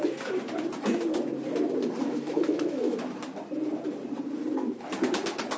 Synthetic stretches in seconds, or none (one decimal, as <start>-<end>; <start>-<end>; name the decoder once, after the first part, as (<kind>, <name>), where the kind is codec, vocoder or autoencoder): 2.0-3.0 (autoencoder, DAC-VAE)